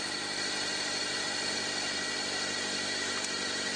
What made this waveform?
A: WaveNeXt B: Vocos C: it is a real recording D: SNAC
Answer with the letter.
C